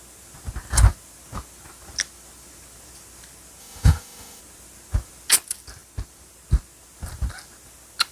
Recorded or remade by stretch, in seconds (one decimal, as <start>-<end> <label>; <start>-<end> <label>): 0.0-3.6 recorded; 3.6-4.4 remade; 4.4-8.1 recorded